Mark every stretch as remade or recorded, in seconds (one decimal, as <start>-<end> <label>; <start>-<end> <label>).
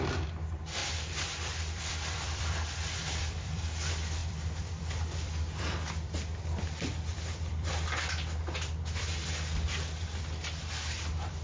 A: 0.0-0.8 recorded; 0.8-3.6 remade; 3.6-4.2 recorded; 4.2-5.9 remade; 5.9-7.1 recorded; 7.1-7.7 remade; 7.7-11.4 recorded